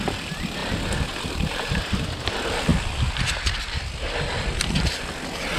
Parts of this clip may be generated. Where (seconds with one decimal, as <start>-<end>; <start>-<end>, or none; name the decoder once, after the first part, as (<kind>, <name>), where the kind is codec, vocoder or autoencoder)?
0.6-2.3 (vocoder, BigVGAN v2)